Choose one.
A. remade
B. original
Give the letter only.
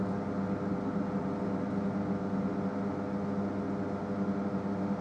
B